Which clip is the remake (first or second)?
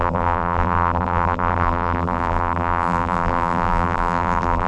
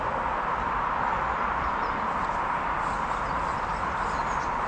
first